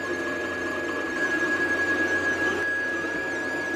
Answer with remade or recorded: recorded